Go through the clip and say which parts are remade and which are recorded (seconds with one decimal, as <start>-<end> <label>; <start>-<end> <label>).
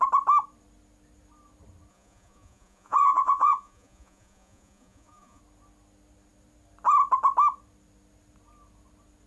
0.0-1.9 recorded; 1.9-5.4 remade; 5.4-9.3 recorded